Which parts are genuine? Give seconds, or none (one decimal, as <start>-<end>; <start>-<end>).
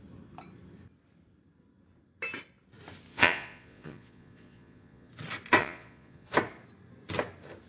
0.0-3.1; 5.1-5.6; 6.3-7.7